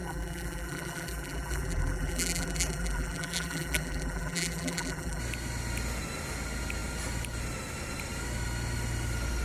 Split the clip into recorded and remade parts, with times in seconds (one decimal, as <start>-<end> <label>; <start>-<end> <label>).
0.0-5.2 remade; 5.2-9.4 recorded

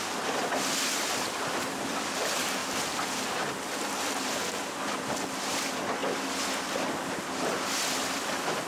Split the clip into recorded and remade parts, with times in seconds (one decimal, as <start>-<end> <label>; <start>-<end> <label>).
0.0-2.6 remade; 2.6-4.0 recorded; 4.0-6.0 remade; 6.0-7.1 recorded; 7.1-8.7 remade